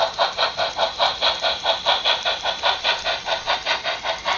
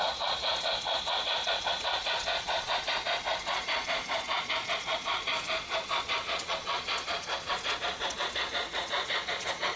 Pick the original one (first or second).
first